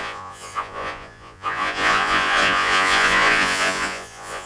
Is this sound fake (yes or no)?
yes